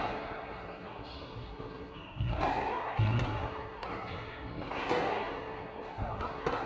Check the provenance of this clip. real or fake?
fake